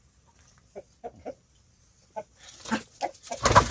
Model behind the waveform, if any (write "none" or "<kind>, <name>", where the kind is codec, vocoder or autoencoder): none